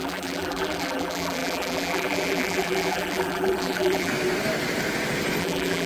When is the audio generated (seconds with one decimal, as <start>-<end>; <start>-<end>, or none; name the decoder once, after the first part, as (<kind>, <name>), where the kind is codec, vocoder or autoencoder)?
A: 0.0-4.1 (vocoder, BigVGAN v2); 5.4-5.9